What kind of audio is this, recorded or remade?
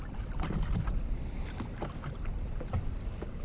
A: recorded